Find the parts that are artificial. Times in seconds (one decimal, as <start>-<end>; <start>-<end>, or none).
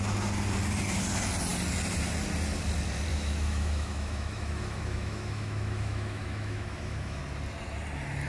3.1-7.2